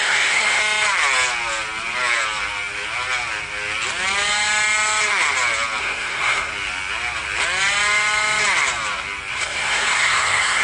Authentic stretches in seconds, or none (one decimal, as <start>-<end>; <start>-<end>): 0.6-5.8; 6.5-9.3

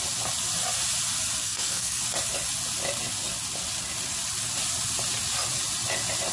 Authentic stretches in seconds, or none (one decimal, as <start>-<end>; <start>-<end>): 0.0-1.4; 2.0-6.3

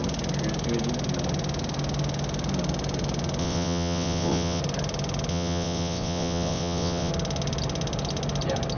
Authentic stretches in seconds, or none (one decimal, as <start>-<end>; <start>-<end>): 0.0-3.4; 4.6-5.3; 7.1-8.8

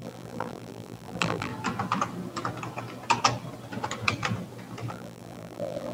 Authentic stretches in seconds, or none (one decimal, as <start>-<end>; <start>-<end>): 1.5-4.9

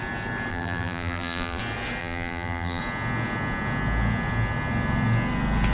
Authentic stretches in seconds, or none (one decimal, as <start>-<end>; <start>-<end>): 0.0-0.5; 1.6-2.0; 2.8-5.7